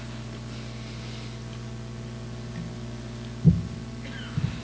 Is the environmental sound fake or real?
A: real